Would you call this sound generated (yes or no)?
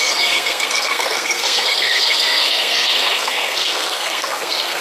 yes